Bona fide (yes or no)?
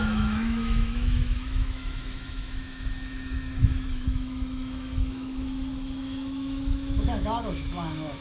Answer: no